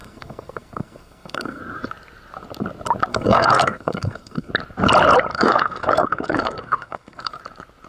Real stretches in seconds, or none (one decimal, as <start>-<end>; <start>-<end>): 1.6-3.1; 4.5-5.3; 7.4-7.9